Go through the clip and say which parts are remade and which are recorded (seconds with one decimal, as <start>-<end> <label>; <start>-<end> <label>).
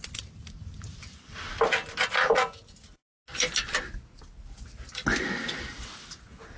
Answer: 0.0-6.6 recorded